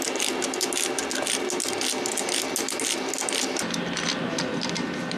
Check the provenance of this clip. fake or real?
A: real